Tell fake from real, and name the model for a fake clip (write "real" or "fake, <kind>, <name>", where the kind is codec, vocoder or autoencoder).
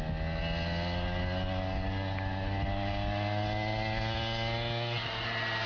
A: real